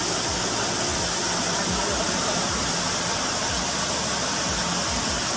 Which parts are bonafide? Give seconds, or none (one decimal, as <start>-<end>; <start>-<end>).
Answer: 0.0-5.4